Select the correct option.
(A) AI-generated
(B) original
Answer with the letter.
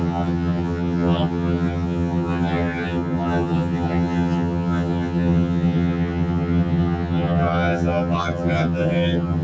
A